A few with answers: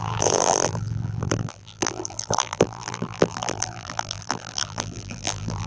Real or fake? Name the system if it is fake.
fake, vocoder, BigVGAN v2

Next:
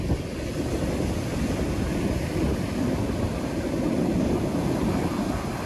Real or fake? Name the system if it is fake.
real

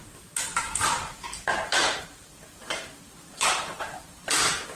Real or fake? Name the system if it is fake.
fake, vocoder, BigVGAN v2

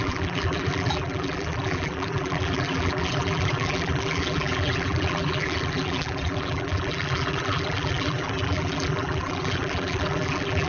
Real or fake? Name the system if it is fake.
fake, vocoder, BigVGAN v2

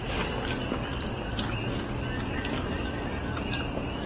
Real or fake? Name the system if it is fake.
real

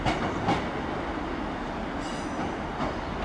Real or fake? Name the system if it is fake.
real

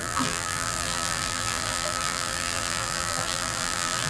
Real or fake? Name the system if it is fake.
fake, vocoder, BigVGAN v2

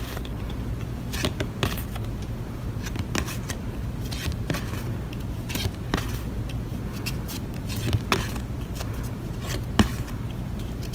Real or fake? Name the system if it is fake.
real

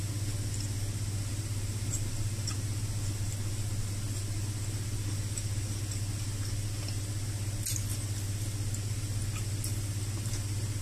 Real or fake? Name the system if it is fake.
real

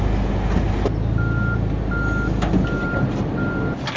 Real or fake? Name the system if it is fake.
real